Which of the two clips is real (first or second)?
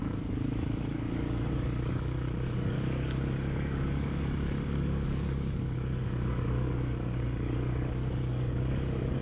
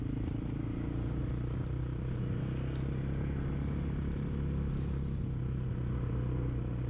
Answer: second